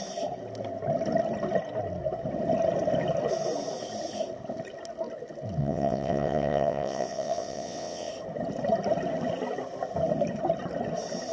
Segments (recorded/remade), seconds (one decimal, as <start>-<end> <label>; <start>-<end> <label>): 0.0-5.6 recorded; 5.6-8.1 remade; 8.1-11.3 recorded